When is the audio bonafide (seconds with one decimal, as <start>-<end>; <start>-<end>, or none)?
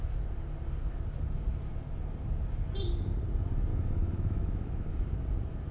0.0-3.7; 4.9-5.7